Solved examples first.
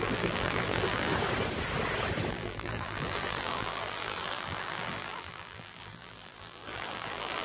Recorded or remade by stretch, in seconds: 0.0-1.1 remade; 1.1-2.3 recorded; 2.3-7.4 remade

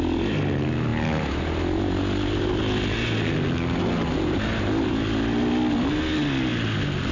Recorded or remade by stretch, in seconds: 0.0-7.1 recorded

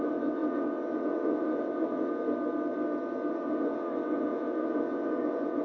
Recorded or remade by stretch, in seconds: 0.0-2.1 remade; 2.1-3.3 recorded; 3.3-5.6 remade

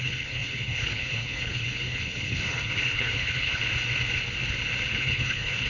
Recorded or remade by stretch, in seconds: 0.0-3.6 remade; 3.6-4.9 recorded; 4.9-5.7 remade

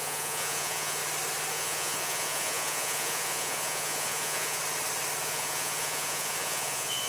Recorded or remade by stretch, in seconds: 0.0-1.0 remade; 1.0-1.5 recorded; 1.5-4.6 remade; 4.6-5.2 recorded; 5.2-7.1 remade